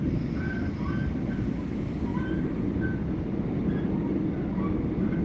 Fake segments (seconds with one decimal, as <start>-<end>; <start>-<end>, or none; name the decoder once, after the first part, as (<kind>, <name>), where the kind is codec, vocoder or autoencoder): none